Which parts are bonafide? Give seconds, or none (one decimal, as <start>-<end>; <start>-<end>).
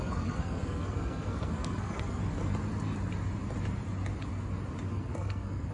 2.2-4.9